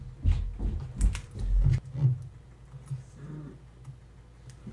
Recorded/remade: recorded